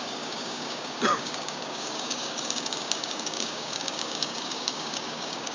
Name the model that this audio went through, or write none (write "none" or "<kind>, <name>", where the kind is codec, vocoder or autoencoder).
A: codec, DAC